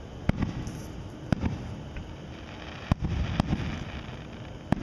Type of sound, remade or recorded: recorded